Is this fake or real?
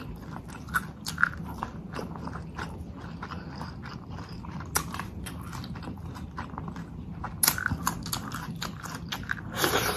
real